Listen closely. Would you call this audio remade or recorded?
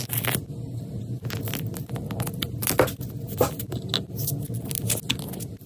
recorded